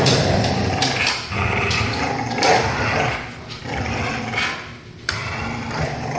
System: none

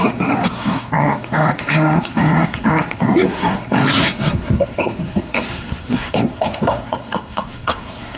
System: codec, SNAC